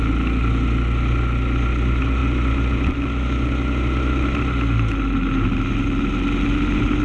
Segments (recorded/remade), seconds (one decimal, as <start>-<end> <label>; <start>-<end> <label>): 0.0-7.0 recorded